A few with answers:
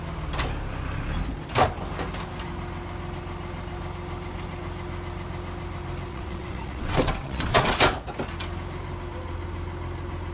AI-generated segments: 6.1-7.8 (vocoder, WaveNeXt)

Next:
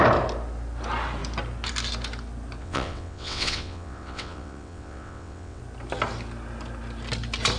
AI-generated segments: 2.6-5.6 (vocoder, WaveNeXt)

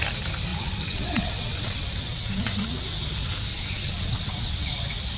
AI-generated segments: 0.5-2.8 (vocoder, WaveNeXt); 3.5-4.7

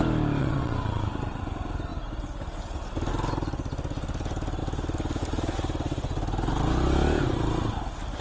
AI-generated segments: 0.4-1.4 (vocoder, WaveNeXt)

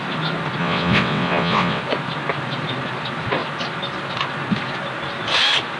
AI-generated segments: 0.6-1.8 (vocoder, WaveNeXt)